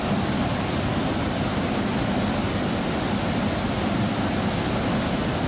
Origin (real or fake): real